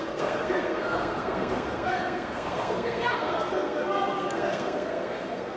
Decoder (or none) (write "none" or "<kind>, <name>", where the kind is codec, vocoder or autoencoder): codec, SNAC